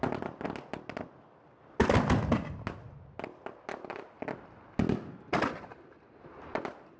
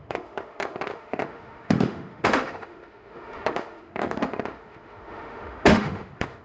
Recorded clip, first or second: first